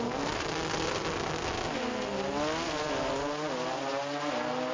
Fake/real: real